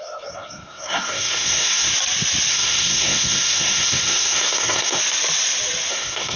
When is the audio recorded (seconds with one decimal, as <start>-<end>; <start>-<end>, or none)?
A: 1.9-2.5; 5.0-5.9